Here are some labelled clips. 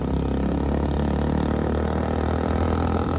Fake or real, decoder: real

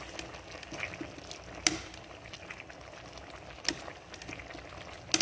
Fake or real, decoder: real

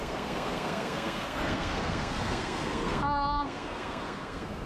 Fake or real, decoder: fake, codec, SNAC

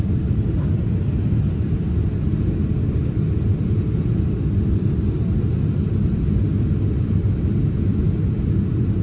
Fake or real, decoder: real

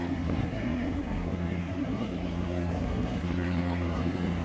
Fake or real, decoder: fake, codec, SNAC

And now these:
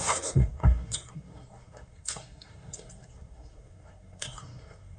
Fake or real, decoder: fake, codec, SNAC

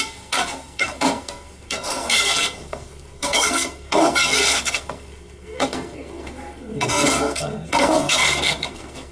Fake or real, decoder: fake, codec, SNAC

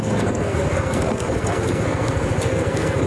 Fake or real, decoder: fake, codec, SNAC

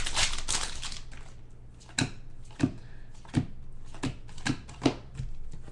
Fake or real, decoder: real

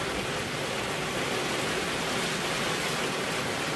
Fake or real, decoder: real